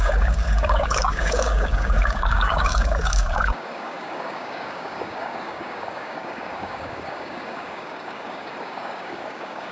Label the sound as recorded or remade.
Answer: remade